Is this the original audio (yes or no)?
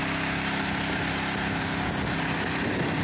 yes